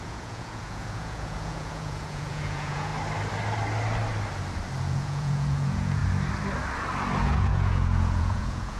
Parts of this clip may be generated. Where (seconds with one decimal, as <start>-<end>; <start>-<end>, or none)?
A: 0.0-2.9; 4.8-6.0; 7.2-8.8